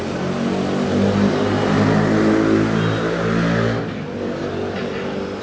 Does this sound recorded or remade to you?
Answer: recorded